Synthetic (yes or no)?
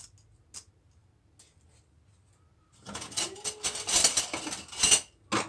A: no